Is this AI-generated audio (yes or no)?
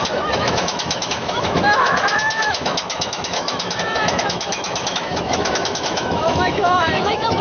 yes